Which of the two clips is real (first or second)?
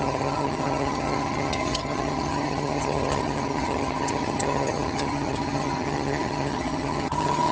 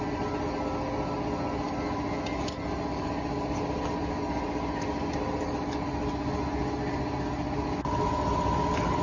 second